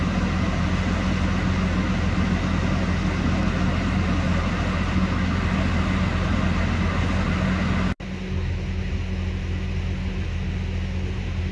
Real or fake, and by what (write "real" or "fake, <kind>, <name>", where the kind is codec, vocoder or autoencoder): real